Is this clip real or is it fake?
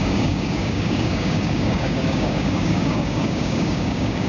fake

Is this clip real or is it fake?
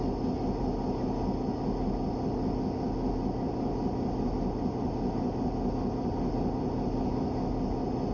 real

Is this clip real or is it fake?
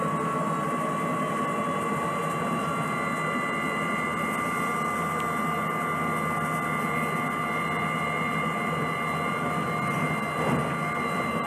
real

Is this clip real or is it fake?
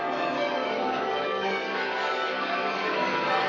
fake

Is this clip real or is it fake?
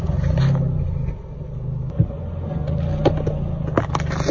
real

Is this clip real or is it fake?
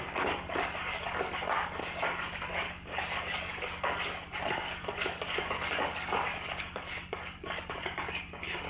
fake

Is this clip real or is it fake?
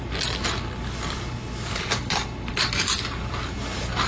real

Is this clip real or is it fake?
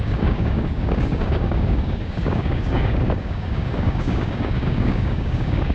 fake